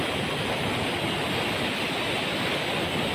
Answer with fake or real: real